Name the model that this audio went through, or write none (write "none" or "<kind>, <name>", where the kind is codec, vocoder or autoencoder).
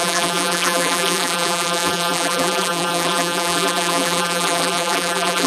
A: vocoder, BigVGAN v2